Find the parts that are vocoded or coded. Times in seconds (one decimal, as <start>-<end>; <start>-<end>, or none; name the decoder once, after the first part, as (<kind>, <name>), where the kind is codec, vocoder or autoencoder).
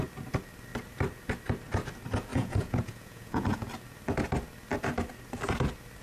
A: 2.3-3.7 (vocoder, Vocos)